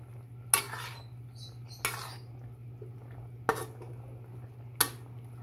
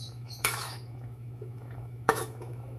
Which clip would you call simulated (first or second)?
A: second